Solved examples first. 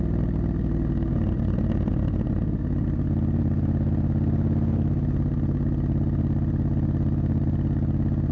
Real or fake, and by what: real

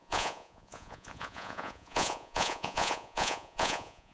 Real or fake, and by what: fake, vocoder, Vocos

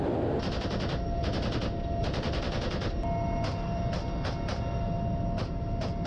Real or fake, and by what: real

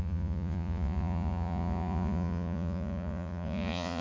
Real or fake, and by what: fake, vocoder, Vocos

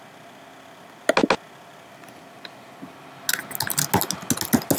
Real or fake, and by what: real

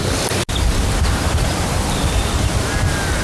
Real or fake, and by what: real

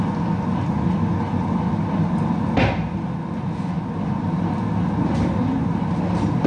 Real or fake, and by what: real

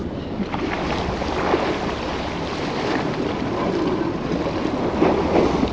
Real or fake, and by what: real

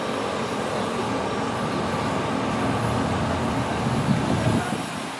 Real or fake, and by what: real